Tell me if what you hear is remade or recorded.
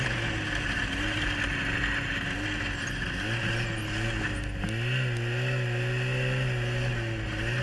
recorded